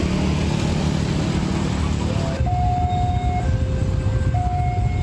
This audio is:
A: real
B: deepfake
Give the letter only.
A